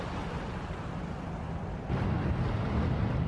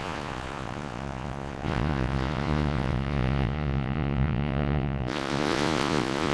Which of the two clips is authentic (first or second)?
first